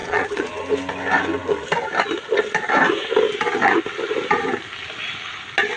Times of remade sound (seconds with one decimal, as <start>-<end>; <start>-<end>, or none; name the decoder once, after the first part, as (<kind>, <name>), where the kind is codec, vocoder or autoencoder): 0.0-0.5 (vocoder, Vocos)